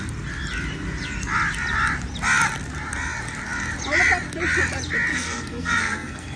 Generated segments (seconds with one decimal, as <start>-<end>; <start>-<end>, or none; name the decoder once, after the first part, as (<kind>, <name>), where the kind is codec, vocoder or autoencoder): 5.1-6.4 (codec, SNAC)